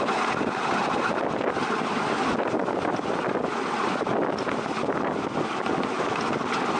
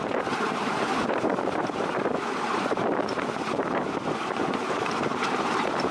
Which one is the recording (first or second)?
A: first